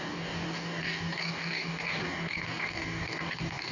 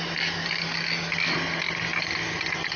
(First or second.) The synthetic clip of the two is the first